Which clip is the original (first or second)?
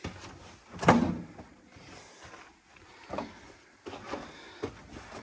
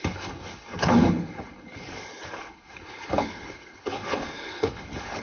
first